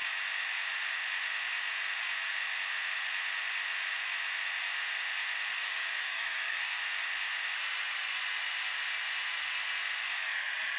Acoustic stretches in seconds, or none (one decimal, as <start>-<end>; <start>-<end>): 0.0-5.6; 6.8-10.8